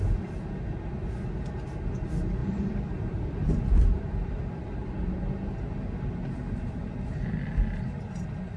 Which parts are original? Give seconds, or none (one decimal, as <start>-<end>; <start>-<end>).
0.0-2.4; 5.2-8.6